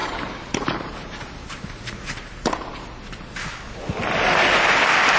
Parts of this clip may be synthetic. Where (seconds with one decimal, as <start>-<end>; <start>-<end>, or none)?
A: 0.0-2.5